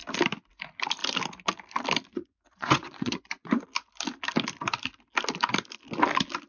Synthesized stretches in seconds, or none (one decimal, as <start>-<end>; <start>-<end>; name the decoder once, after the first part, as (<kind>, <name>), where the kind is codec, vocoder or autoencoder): 2.1-3.6 (vocoder, Vocos)